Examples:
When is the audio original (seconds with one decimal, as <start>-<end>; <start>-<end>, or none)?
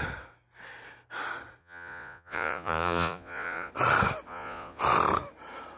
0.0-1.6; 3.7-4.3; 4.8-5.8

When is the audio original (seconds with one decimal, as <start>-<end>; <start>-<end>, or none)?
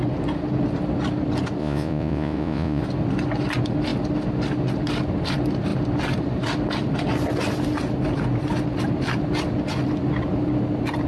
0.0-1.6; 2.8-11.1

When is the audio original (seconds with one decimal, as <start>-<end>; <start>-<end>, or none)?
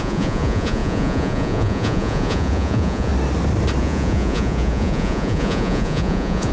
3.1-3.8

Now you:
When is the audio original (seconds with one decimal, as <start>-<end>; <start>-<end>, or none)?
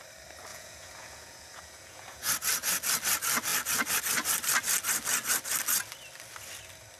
0.0-0.5; 2.3-7.0